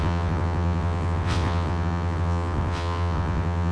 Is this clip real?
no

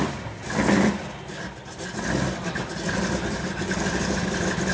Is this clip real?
yes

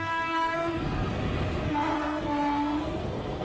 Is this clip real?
no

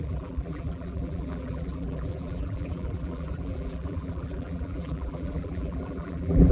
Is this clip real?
no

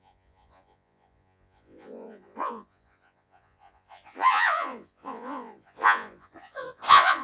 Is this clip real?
no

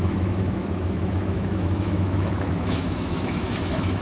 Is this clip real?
no